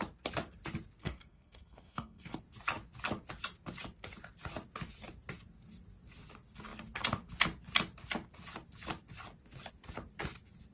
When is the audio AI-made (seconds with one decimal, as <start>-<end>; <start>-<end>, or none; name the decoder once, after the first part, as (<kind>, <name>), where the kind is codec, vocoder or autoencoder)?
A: 1.0-2.4 (codec, SNAC)